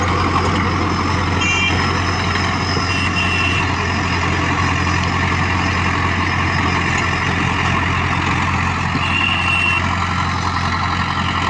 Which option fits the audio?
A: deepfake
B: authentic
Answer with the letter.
B